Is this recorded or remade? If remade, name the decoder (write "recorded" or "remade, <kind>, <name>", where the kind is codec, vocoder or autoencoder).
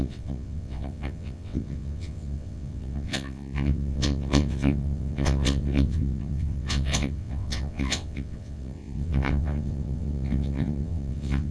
remade, vocoder, WaveNeXt